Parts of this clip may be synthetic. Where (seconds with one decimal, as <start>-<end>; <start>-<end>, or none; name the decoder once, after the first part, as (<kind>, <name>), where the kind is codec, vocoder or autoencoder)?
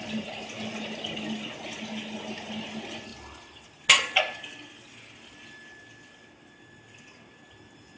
none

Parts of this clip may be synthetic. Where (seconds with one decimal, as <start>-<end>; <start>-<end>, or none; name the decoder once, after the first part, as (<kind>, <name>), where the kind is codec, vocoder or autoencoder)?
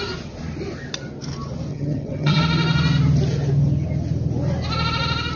1.7-2.4 (vocoder, HiFi-GAN)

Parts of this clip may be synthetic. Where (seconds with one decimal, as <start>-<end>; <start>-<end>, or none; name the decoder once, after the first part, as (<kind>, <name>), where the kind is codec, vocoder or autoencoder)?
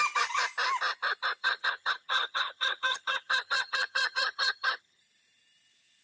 1.4-5.0 (vocoder, HiFi-GAN)